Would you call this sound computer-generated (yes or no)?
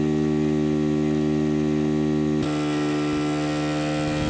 no